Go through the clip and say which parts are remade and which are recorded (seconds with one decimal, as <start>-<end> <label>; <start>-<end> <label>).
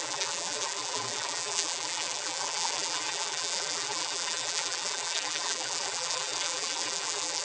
0.0-7.4 remade